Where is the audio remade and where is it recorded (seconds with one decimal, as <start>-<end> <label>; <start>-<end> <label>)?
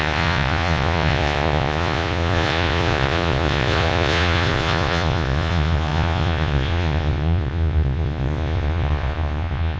0.0-9.8 remade